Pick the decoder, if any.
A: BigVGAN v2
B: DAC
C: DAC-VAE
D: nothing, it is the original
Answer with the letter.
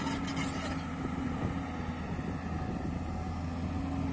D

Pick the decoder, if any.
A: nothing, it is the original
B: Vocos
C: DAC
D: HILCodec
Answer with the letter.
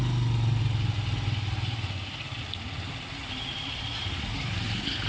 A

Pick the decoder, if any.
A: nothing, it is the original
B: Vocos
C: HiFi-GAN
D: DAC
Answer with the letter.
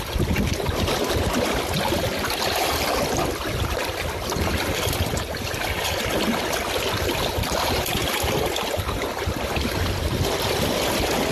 A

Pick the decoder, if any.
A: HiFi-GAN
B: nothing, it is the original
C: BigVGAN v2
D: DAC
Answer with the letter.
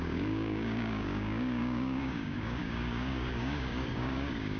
D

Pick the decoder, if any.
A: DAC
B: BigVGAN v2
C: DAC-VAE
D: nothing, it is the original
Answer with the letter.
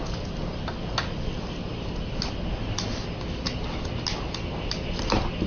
D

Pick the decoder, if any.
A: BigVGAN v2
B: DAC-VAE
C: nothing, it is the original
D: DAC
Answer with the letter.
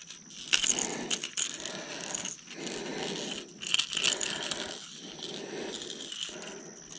C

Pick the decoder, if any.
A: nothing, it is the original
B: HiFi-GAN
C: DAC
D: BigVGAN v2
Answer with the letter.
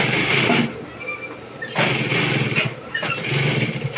A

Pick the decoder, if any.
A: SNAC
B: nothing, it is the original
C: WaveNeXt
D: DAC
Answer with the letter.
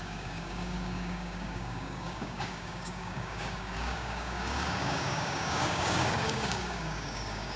D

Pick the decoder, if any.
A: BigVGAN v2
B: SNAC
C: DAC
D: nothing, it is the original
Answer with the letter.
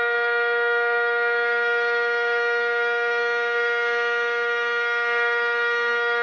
C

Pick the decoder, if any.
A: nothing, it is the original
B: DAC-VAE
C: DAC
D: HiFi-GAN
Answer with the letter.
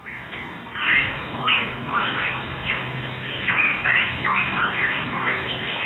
C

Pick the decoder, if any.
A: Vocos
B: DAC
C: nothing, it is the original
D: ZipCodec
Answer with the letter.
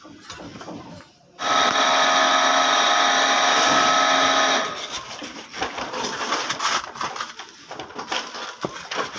C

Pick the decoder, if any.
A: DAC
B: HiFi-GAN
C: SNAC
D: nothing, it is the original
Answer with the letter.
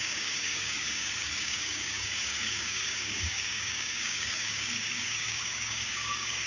A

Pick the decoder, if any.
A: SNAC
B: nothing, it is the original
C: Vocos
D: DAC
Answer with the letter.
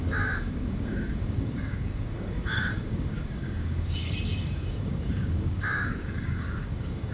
D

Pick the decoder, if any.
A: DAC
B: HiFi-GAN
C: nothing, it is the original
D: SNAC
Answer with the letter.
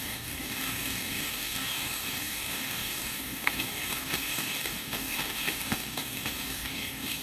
A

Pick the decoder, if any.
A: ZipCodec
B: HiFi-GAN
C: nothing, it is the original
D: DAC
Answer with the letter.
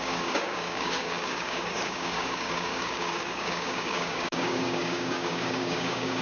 D